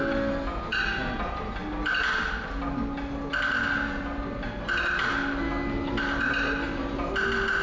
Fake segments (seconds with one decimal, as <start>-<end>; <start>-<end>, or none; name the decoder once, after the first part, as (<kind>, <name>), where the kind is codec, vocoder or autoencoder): none

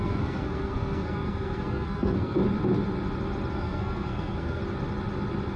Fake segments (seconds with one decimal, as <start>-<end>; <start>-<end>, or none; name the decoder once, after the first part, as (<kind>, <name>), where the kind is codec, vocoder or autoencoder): 0.0-2.4 (codec, SNAC); 3.5-4.6

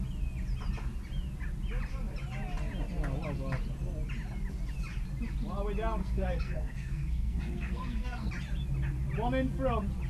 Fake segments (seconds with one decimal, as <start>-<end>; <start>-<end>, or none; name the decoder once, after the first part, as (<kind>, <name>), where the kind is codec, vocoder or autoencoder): 6.0-8.3 (codec, SNAC)